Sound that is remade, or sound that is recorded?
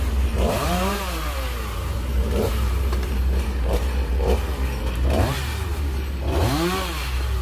remade